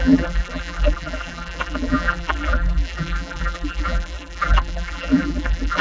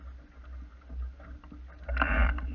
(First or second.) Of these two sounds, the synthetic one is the first